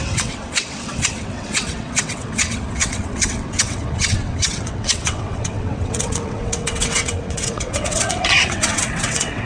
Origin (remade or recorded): remade